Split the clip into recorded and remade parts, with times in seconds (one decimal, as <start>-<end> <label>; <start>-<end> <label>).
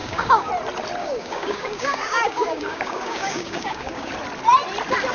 0.0-0.5 remade; 0.5-1.0 recorded; 1.0-4.1 remade; 4.1-5.1 recorded